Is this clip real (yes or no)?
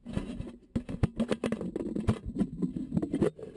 yes